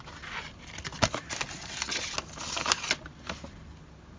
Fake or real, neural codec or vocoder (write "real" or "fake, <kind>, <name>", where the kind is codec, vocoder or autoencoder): real